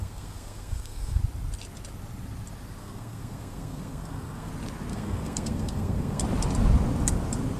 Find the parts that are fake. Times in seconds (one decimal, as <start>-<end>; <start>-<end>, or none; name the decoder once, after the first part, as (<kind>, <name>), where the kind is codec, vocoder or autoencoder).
0.0-1.2 (codec, SNAC); 2.8-4.5; 4.9-6.2